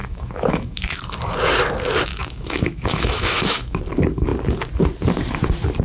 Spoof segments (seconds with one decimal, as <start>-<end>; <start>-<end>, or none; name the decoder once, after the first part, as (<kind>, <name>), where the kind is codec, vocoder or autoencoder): 0.0-1.0 (autoencoder, DAC-VAE); 2.1-3.8